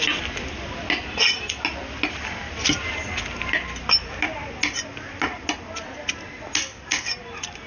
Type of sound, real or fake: real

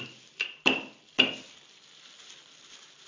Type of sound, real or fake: real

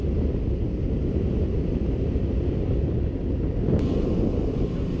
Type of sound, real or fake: real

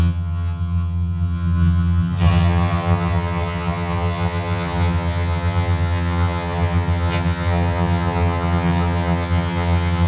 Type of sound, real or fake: fake